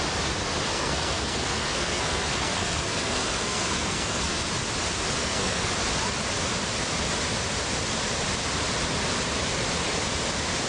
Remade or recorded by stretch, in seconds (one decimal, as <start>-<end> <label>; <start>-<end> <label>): 0.0-0.7 recorded; 0.7-4.5 remade; 4.5-5.2 recorded; 5.2-5.7 remade; 5.7-10.7 recorded